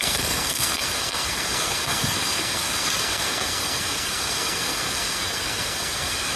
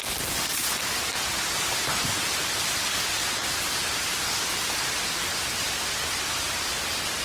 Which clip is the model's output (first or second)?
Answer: first